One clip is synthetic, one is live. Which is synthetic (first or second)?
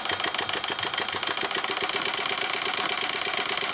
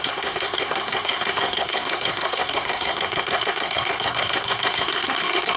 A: second